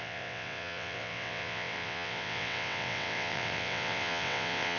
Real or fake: fake